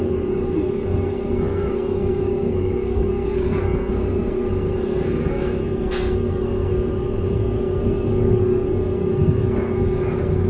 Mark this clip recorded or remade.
remade